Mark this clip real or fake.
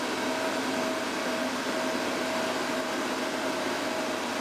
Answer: real